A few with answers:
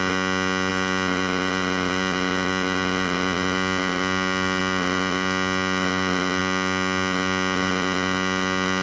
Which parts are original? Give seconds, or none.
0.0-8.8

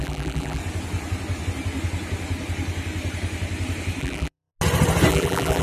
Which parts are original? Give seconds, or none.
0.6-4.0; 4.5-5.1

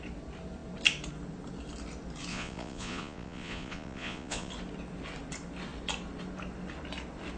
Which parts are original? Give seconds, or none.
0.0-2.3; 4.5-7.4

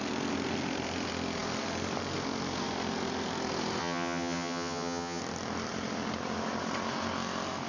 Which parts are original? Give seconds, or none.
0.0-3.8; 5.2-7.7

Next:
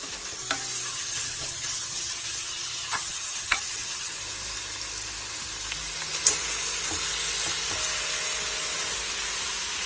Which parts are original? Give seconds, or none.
0.0-0.9; 4.2-9.9

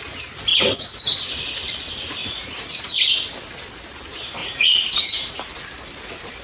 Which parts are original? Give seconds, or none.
0.0-0.5; 1.0-2.2; 2.9-4.4; 5.4-6.4

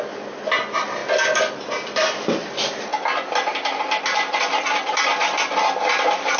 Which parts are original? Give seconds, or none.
0.0-6.4

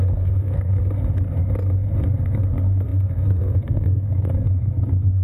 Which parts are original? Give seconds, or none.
0.8-2.2